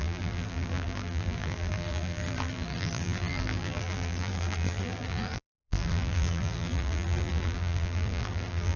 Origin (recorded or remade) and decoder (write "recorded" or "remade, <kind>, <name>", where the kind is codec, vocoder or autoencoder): remade, vocoder, BigVGAN v2